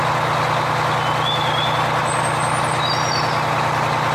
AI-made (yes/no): no